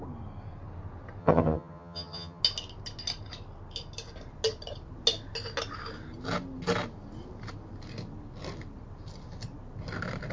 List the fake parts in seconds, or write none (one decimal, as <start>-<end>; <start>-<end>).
1.2-2.4